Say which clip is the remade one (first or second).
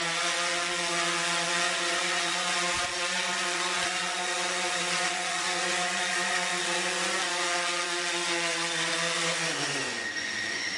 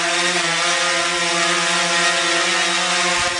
first